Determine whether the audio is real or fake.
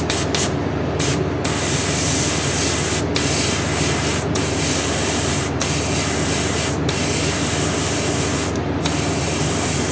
real